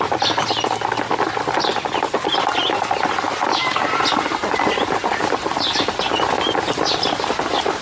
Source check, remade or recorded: recorded